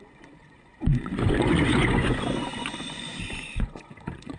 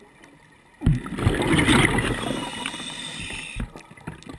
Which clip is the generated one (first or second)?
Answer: first